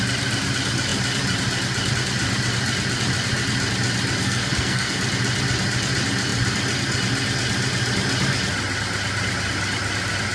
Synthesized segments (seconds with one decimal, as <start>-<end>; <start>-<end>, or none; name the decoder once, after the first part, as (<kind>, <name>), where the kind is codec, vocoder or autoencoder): 4.2-5.0 (codec, SNAC)